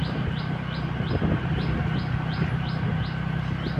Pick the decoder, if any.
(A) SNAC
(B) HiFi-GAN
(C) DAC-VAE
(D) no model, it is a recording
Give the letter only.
D